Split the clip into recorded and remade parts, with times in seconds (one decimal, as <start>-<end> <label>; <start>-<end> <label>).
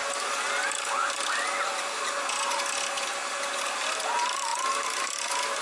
0.0-5.6 recorded